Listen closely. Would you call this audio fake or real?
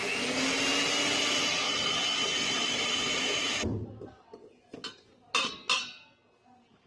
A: real